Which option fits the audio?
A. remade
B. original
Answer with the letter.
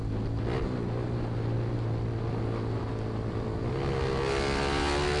B